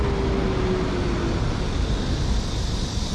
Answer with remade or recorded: recorded